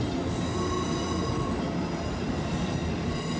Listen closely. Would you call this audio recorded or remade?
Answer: recorded